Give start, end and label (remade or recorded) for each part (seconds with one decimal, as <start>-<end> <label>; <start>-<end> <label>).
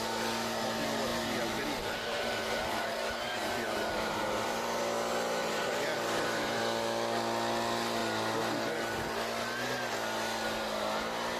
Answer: 0.0-1.1 recorded; 1.1-4.8 remade; 4.8-5.4 recorded; 5.4-6.6 remade; 6.6-11.4 recorded